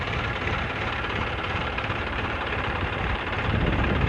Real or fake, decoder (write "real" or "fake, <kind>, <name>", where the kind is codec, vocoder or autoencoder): fake, vocoder, BigVGAN v2